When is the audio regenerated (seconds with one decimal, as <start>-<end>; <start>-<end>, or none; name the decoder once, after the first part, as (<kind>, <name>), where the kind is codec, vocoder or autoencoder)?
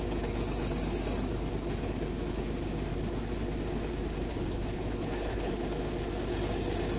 4.3-5.5 (codec, HILCodec)